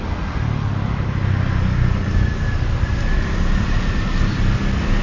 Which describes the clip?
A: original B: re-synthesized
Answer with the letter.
A